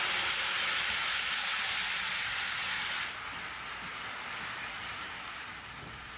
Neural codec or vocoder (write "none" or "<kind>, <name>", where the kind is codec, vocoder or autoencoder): none